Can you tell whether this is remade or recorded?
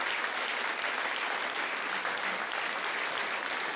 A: recorded